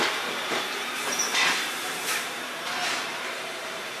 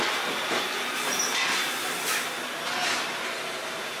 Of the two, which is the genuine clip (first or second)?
second